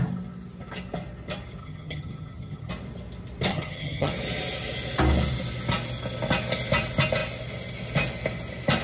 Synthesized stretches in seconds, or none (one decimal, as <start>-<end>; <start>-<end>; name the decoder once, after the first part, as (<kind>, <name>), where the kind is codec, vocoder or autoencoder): 1.6-2.7 (vocoder, HiFi-GAN); 3.5-4.1

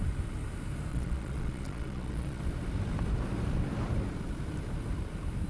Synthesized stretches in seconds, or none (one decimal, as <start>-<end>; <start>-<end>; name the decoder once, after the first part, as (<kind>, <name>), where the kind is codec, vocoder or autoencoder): 0.9-2.4 (vocoder, Vocos)